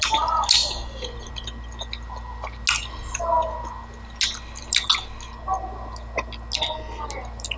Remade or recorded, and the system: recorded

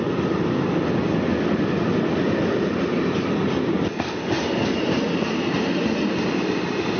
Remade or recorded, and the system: recorded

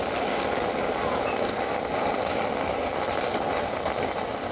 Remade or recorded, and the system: recorded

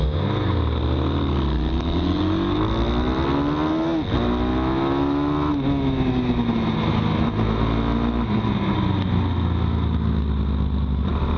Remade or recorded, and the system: recorded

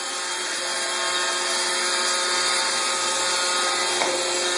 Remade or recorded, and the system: recorded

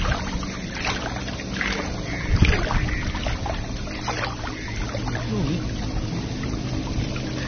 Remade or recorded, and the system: recorded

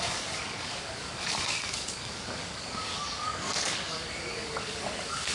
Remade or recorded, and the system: remade, codec, DAC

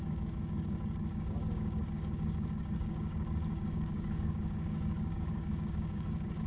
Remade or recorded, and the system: remade, codec, DAC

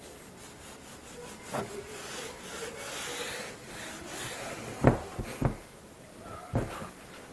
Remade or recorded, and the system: recorded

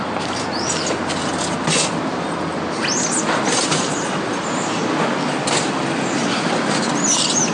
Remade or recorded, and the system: recorded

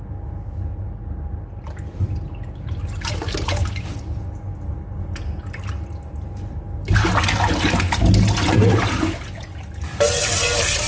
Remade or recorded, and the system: recorded